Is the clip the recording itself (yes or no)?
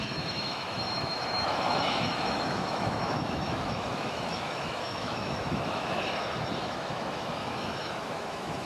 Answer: no